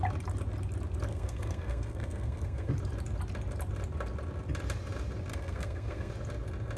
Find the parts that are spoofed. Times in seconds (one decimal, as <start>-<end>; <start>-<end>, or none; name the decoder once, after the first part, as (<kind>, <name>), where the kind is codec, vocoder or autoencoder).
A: 1.1-2.7 (codec, SNAC); 5.3-6.1